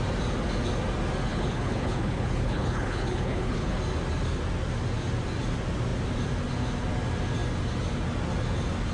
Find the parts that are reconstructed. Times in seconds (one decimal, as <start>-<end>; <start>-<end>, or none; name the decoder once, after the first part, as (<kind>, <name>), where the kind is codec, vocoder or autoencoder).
1.3-3.7 (codec, HILCodec)